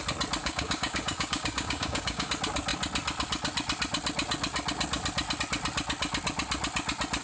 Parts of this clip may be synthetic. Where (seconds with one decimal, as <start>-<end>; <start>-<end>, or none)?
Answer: 0.4-2.3